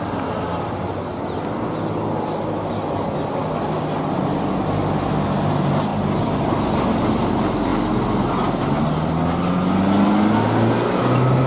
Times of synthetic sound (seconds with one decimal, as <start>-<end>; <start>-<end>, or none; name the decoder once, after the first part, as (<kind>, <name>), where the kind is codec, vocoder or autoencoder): none